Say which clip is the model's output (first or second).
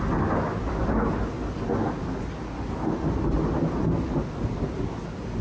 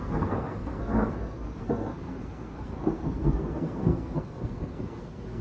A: second